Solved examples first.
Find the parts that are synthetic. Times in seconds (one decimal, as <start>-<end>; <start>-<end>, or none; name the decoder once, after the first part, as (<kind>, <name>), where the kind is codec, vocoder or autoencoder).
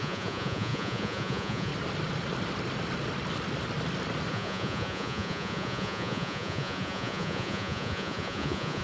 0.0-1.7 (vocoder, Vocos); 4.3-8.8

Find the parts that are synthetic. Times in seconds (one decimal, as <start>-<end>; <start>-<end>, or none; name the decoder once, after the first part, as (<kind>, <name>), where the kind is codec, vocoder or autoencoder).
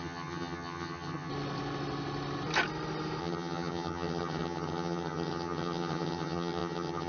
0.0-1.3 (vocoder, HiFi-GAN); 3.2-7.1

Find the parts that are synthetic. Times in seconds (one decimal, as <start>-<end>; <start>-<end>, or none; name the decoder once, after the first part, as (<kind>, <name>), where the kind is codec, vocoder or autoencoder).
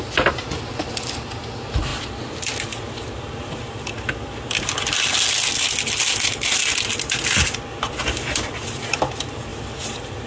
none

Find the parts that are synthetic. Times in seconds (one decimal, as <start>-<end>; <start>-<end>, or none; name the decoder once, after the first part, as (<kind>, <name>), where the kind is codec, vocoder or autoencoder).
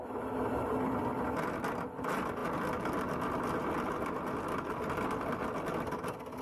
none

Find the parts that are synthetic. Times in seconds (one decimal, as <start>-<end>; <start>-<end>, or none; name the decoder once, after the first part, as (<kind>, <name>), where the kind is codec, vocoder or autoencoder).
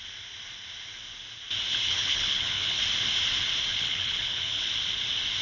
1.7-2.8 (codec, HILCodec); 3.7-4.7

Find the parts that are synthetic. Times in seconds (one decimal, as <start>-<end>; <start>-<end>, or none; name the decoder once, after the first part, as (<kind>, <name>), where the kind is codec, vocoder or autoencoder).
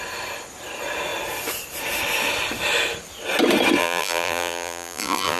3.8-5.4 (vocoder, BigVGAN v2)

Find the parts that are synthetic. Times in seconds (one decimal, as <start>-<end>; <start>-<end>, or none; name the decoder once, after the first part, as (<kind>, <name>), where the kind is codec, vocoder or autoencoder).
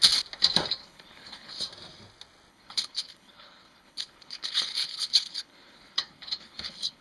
0.8-1.6 (codec, HILCodec); 2.5-7.0